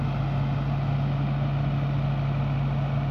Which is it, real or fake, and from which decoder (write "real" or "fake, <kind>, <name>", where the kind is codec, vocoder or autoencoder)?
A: real